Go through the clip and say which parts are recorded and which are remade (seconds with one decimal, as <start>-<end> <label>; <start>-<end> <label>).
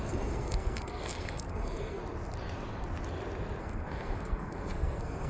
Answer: 0.0-2.0 remade; 2.0-3.6 recorded; 3.6-5.3 remade